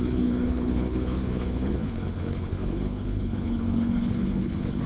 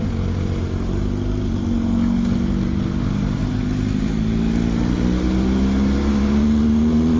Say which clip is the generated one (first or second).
first